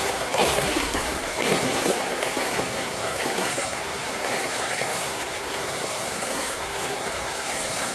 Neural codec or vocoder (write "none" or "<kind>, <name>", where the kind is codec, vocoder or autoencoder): codec, SNAC